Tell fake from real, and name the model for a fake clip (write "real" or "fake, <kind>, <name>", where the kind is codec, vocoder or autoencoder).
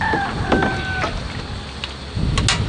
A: real